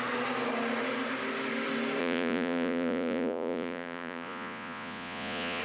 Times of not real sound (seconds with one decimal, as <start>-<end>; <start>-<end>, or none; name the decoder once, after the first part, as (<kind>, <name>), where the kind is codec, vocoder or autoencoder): 2.0-5.6 (vocoder, Vocos)